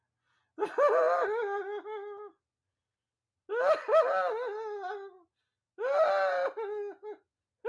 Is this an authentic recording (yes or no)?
yes